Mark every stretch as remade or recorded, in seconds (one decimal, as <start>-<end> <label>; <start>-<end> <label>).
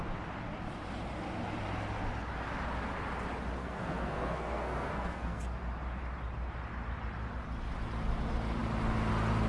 0.0-3.6 recorded; 3.6-5.4 remade; 5.4-9.5 recorded